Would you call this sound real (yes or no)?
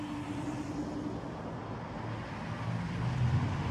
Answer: yes